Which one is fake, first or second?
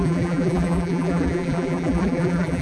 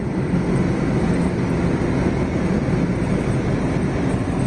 first